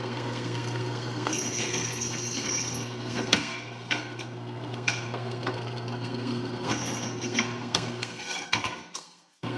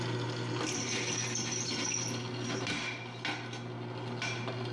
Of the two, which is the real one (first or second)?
second